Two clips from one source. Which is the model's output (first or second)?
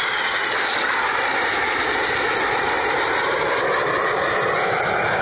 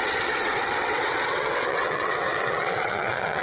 second